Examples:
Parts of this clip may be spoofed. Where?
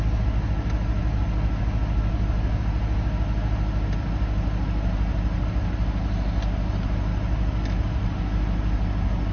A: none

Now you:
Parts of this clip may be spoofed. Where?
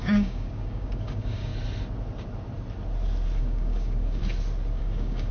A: 0.0-1.5 (codec, DAC); 3.4-4.2; 4.8-5.3